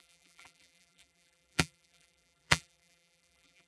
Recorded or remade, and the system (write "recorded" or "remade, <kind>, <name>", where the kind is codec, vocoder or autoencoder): remade, vocoder, BigVGAN v2